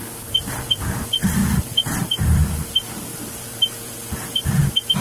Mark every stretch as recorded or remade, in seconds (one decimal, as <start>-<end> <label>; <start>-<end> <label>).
0.0-5.0 recorded